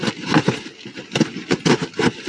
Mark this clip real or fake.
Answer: real